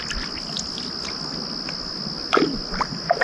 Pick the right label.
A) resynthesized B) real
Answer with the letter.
B